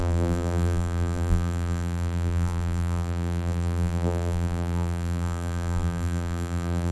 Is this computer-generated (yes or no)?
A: yes